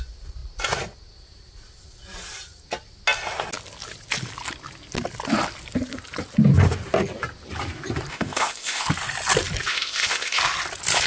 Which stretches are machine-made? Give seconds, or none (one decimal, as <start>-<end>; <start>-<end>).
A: 8.1-8.9; 9.7-10.4